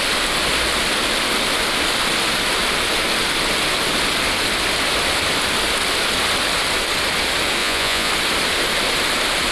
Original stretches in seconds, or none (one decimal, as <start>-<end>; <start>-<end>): 0.0-7.6; 8.1-9.5